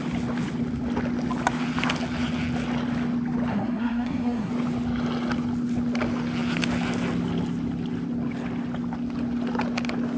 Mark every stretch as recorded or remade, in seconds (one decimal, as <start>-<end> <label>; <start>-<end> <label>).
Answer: 0.0-3.5 recorded; 3.5-4.5 remade; 4.5-10.2 recorded